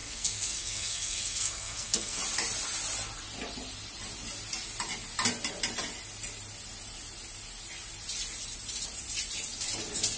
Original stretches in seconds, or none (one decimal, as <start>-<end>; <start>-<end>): 2.2-10.2